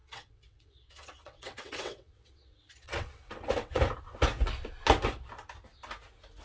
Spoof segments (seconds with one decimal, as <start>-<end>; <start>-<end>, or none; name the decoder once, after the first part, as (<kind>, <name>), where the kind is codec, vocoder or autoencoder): 0.0-3.8 (vocoder, WaveNeXt)